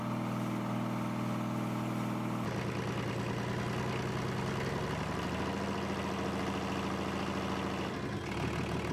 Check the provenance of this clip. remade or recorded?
recorded